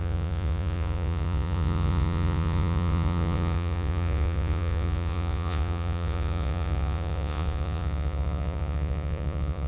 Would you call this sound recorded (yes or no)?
no